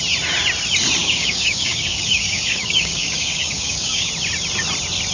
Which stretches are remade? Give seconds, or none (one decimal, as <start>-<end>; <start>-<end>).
1.0-4.1